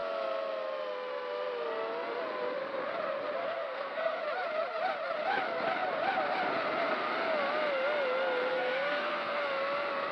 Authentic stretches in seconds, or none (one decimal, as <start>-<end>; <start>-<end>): 0.0-3.4; 4.2-8.5; 9.4-10.1